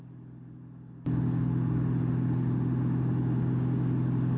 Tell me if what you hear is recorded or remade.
recorded